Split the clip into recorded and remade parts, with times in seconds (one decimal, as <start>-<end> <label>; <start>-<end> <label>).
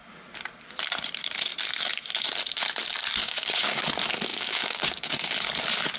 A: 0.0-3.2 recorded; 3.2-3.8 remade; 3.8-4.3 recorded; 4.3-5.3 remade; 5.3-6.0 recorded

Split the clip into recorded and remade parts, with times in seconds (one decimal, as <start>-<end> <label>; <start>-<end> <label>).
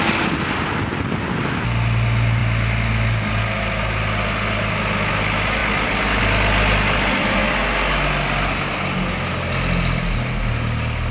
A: 0.0-11.1 recorded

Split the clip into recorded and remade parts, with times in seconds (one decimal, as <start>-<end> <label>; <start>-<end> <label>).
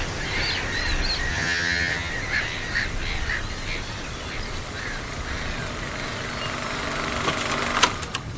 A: 0.0-1.3 recorded; 1.3-2.1 remade; 2.1-8.4 recorded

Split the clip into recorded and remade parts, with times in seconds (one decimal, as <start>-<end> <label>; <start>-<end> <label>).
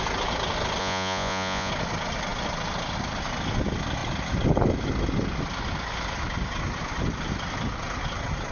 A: 0.0-0.8 recorded; 0.8-1.7 remade; 1.7-8.5 recorded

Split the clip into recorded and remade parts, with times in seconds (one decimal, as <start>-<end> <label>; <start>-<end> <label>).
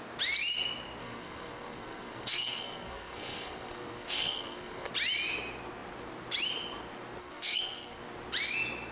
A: 0.0-1.0 recorded; 1.0-4.9 remade; 4.9-7.2 recorded; 7.2-8.0 remade; 8.0-8.9 recorded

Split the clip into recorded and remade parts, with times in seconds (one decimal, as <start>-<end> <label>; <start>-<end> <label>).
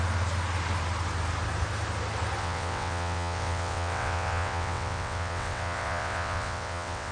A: 0.0-2.4 recorded; 2.4-7.1 remade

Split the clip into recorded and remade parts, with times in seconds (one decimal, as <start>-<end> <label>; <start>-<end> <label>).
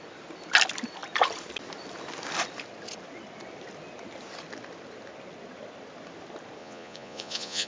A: 0.0-6.6 recorded; 6.6-7.7 remade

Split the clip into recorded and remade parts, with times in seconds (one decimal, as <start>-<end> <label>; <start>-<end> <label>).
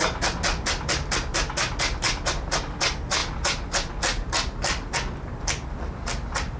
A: 0.0-6.6 recorded